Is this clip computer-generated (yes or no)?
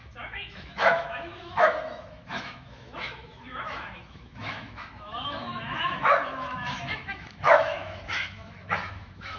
yes